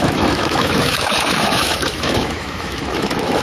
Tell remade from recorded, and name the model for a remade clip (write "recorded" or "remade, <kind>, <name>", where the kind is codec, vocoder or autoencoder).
remade, autoencoder, DAC-VAE